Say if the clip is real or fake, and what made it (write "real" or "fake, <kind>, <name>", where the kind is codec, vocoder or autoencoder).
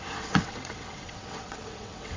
fake, vocoder, WaveNeXt